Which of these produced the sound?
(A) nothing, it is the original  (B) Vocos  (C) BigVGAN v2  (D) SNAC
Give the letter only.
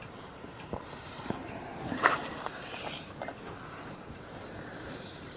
C